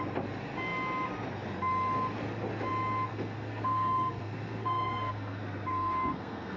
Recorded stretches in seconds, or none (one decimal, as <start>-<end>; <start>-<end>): 0.0-3.1